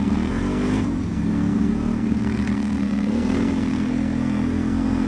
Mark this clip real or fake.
fake